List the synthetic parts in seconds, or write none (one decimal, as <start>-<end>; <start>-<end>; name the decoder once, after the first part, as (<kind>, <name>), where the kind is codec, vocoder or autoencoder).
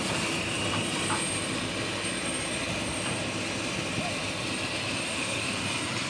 5.1-5.6 (autoencoder, DAC-VAE)